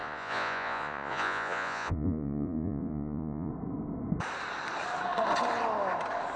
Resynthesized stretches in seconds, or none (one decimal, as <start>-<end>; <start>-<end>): 0.0-3.5

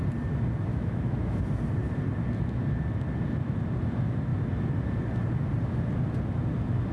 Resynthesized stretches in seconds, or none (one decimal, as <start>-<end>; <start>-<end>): 0.7-1.4

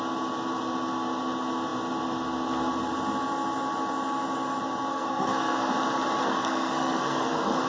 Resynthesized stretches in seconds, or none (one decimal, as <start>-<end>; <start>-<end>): 4.9-5.7; 6.2-7.7

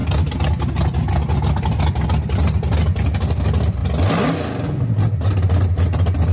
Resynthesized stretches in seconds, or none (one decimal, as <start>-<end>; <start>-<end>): none

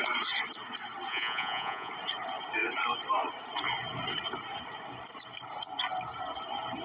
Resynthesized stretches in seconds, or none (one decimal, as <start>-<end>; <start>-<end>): 1.1-1.9